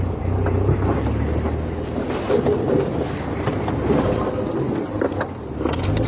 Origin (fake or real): real